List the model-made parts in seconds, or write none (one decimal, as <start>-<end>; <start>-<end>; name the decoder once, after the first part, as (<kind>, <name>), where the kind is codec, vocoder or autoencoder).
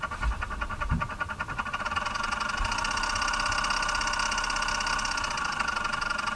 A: none